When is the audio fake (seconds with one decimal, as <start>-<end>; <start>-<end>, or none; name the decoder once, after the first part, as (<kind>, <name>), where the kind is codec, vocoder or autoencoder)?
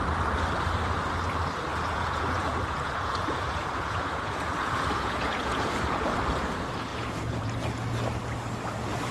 1.7-6.1 (vocoder, Vocos); 6.9-7.5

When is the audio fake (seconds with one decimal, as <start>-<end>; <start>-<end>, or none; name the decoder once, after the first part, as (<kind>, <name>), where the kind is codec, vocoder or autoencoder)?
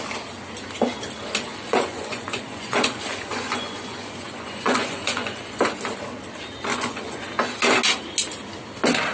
1.5-5.6 (vocoder, Vocos); 6.7-7.2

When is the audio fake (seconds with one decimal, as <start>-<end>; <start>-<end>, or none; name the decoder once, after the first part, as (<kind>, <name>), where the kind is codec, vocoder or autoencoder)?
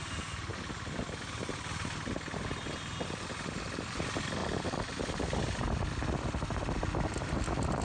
none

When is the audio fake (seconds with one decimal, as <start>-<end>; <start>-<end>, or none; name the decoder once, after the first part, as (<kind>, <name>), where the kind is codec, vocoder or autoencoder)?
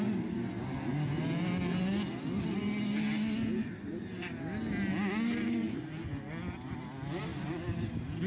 none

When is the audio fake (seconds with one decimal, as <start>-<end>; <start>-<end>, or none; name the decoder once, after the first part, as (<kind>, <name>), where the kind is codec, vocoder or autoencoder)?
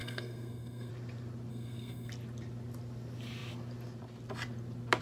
0.0-0.9 (codec, SNAC); 1.5-2.1